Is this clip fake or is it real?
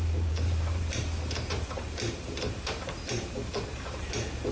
fake